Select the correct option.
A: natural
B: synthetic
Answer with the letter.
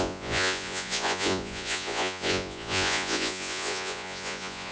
B